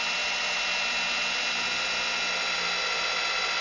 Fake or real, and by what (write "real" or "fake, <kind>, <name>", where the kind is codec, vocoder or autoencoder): real